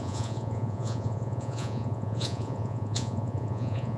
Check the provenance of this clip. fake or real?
fake